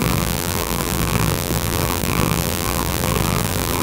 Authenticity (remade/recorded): remade